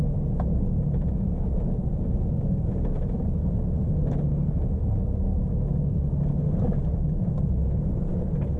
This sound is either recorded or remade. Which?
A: recorded